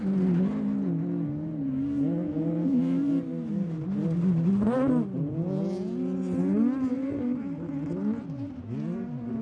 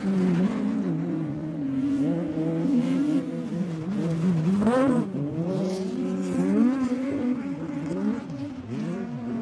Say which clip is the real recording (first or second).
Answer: first